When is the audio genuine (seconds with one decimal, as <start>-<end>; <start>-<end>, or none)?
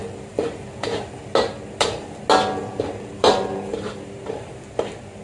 0.0-2.6; 4.5-5.2